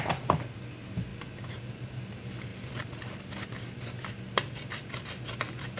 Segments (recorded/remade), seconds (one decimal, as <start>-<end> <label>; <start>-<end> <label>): 0.0-5.8 recorded